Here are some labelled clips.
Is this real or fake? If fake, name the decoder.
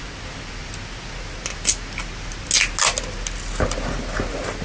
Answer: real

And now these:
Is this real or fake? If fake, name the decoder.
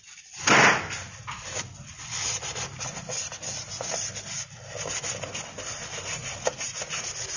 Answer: real